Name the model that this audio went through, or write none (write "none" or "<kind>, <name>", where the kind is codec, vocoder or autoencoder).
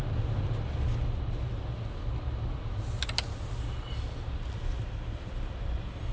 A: none